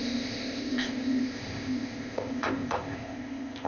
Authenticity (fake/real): fake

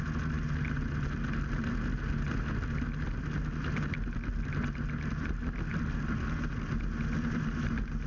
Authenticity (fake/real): real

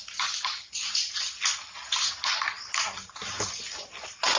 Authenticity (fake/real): real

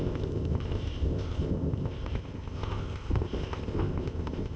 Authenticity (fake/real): fake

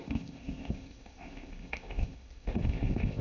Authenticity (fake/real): fake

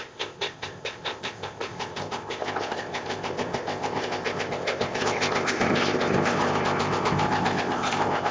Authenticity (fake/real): fake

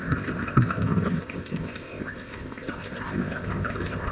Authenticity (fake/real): fake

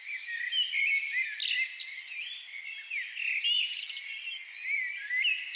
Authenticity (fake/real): real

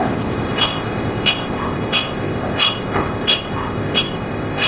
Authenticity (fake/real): fake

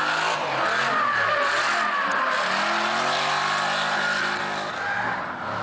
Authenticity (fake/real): real